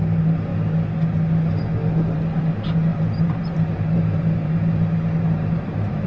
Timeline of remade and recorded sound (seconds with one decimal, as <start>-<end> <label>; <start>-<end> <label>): 0.0-2.9 recorded; 2.9-6.1 remade